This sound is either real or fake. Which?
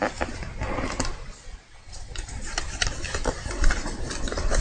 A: real